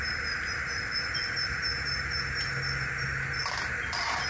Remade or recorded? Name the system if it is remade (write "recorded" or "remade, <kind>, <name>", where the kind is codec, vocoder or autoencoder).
recorded